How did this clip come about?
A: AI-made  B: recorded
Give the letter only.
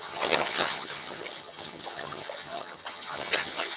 A